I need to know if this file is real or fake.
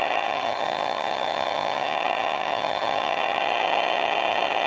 fake